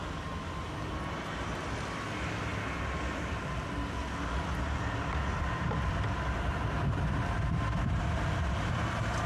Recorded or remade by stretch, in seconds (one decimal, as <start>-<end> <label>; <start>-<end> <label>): 0.0-9.3 recorded

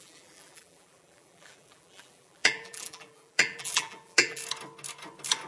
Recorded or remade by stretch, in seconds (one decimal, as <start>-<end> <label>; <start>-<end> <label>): 0.0-4.4 remade; 4.4-5.5 recorded

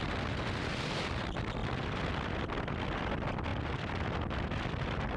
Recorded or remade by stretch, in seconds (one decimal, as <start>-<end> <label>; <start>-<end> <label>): 0.0-5.2 remade

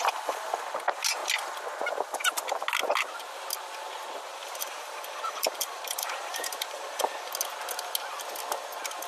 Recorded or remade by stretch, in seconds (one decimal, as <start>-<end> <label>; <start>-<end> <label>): 0.0-4.3 recorded; 4.3-7.3 remade; 7.3-9.1 recorded

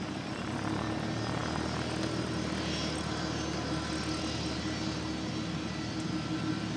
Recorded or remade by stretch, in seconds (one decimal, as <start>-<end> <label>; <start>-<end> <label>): 0.0-6.8 recorded